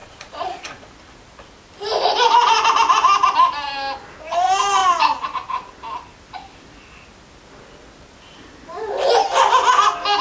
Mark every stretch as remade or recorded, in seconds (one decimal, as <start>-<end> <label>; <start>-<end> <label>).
0.0-0.9 remade; 0.9-10.2 recorded